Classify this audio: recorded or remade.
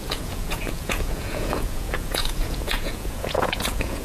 remade